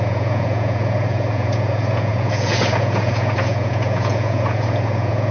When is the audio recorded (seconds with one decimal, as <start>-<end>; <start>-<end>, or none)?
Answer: none